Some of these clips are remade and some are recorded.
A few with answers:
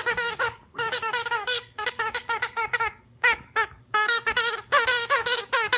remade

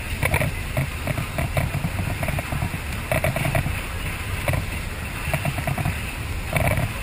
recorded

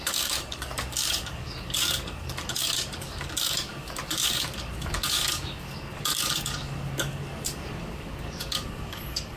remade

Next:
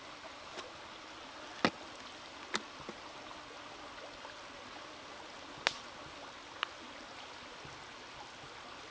recorded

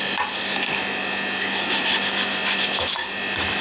recorded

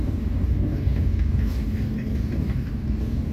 remade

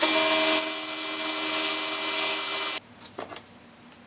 recorded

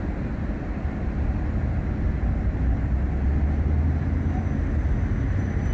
recorded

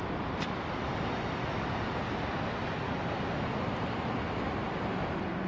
recorded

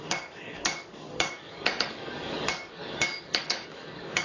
remade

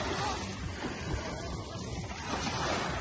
recorded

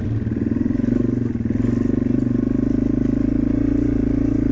recorded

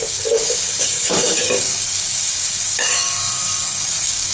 remade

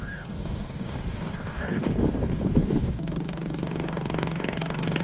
remade